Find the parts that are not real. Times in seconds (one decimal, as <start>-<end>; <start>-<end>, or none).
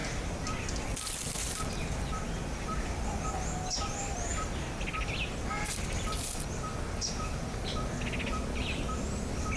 0.0-4.3; 8.6-9.6